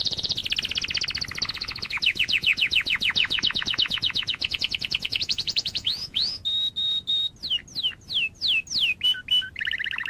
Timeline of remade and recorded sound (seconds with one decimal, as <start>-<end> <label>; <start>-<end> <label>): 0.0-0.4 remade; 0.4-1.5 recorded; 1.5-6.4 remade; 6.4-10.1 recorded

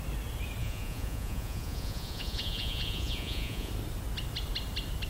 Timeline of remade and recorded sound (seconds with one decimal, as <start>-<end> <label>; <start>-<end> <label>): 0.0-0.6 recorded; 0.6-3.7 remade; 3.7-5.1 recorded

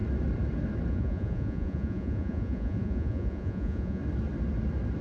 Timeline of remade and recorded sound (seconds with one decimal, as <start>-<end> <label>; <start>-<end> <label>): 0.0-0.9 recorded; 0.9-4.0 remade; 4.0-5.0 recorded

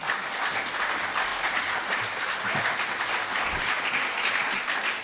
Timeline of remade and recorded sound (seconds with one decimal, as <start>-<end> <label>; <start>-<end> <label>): 0.0-5.0 recorded

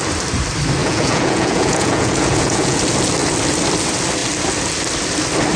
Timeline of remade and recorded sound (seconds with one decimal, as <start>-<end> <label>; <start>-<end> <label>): 0.0-0.8 recorded; 0.8-2.8 remade; 2.8-5.6 recorded

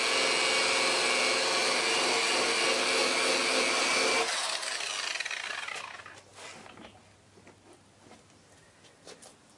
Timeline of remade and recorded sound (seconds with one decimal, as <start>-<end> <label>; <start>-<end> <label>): 0.0-9.6 recorded

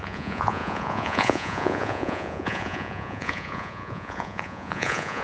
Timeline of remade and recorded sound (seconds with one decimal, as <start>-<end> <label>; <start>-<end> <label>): 0.0-5.2 remade

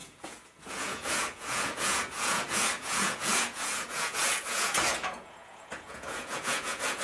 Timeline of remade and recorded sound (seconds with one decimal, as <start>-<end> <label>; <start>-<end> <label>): 0.0-7.0 remade